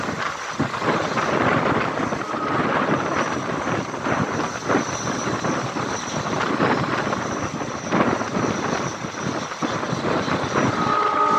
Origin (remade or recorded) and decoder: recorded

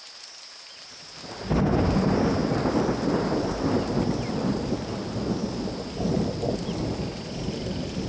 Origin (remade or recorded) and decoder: recorded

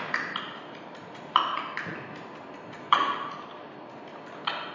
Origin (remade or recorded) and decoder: recorded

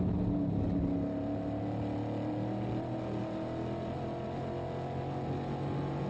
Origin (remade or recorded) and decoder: recorded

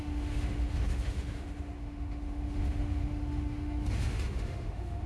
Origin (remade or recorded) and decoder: remade, autoencoder, DAC-VAE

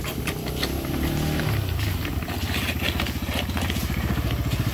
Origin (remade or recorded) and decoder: recorded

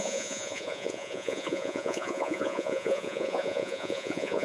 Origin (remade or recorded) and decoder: remade, vocoder, Vocos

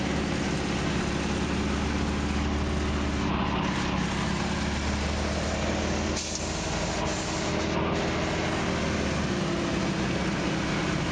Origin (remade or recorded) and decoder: recorded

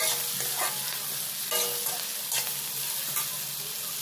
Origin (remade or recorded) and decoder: recorded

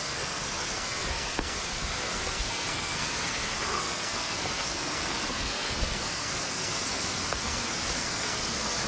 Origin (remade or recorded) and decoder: remade, codec, SNAC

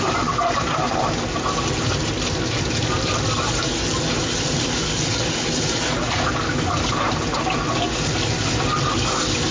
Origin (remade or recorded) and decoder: recorded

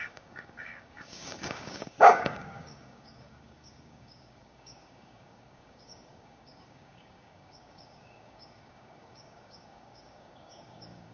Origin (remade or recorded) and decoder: remade, codec, DAC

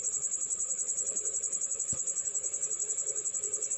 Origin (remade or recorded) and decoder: remade, vocoder, Vocos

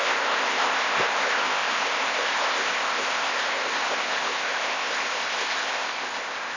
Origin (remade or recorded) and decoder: remade, codec, ZipCodec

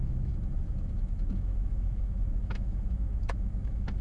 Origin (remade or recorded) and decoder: remade, autoencoder, DAC-VAE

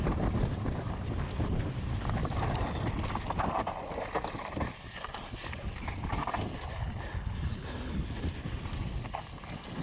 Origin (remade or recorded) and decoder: recorded